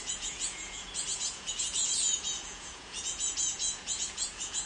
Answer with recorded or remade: remade